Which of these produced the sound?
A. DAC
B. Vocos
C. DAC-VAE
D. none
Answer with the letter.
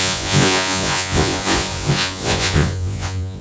B